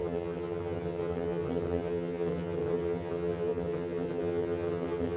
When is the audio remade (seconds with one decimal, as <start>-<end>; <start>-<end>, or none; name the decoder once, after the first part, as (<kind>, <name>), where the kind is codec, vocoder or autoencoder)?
0.0-5.2 (vocoder, HiFi-GAN)